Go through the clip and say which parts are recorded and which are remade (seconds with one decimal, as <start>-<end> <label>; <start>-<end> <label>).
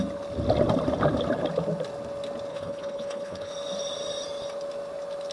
0.0-2.5 recorded; 2.5-3.5 remade; 3.5-5.3 recorded